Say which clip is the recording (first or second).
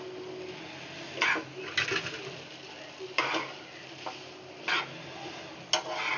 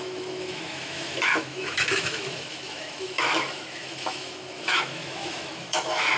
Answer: first